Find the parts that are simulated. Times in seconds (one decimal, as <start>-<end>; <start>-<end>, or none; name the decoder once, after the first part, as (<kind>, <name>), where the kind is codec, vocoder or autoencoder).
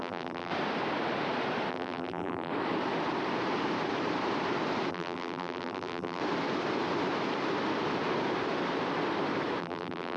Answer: 0.0-0.5 (vocoder, BigVGAN v2); 1.7-2.5; 4.9-6.2; 9.6-10.2